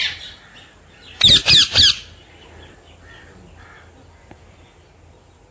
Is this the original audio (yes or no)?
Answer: yes